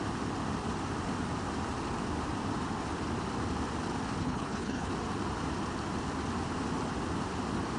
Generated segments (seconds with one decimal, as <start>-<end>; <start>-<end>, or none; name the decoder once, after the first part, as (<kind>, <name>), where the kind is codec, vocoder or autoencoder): 4.2-4.9 (codec, HILCodec)

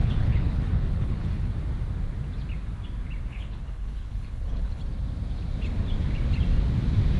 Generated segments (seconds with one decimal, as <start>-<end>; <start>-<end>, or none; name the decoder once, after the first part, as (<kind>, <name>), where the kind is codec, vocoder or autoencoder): 0.0-1.5 (codec, HILCodec); 3.3-4.8

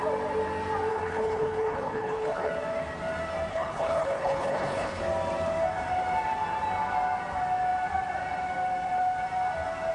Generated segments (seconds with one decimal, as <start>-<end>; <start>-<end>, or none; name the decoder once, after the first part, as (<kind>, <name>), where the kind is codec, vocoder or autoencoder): 0.9-2.5 (codec, HILCodec); 3.5-5.0